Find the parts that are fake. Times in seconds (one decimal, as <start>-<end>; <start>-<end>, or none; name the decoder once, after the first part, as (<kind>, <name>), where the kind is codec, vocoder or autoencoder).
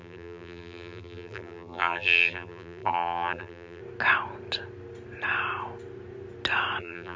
0.0-3.8 (vocoder, BigVGAN v2); 6.8-7.2